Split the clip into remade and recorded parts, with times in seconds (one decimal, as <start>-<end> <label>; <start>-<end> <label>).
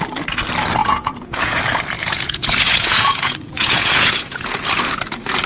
0.0-0.8 recorded; 0.8-1.6 remade; 1.6-2.0 recorded; 2.0-4.5 remade; 4.5-5.5 recorded